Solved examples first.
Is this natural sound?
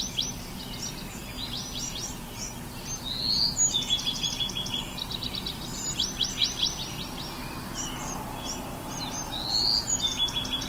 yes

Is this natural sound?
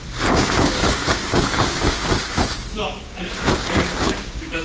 no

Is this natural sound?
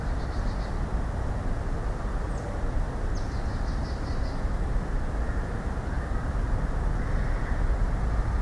yes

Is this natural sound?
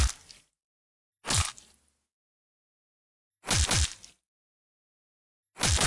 yes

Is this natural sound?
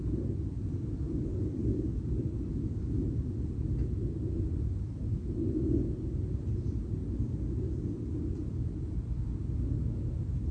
yes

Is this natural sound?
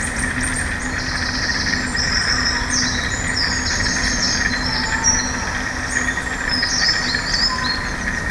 yes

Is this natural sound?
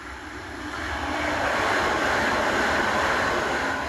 yes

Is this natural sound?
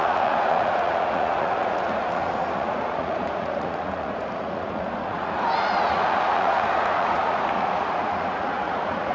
no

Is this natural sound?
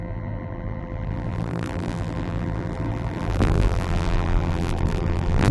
no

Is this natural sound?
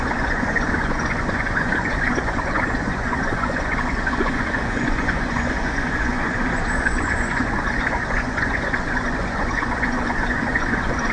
no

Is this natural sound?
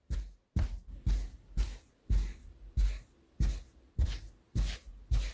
yes